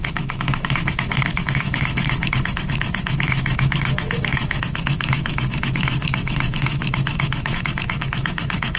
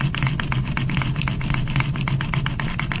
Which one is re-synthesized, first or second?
first